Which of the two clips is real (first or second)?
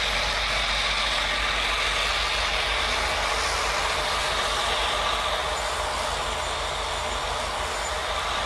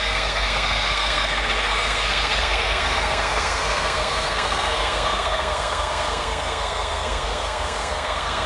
first